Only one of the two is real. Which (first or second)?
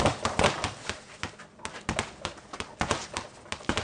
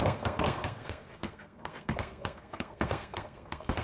first